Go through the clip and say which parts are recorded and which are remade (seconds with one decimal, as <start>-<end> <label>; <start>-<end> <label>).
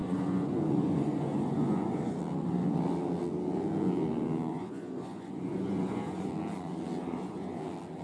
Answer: 0.0-2.2 remade; 2.2-4.5 recorded; 4.5-6.3 remade; 6.3-7.0 recorded; 7.0-7.6 remade; 7.6-8.0 recorded